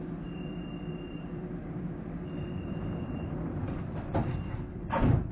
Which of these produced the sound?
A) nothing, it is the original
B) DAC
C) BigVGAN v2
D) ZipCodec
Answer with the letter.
C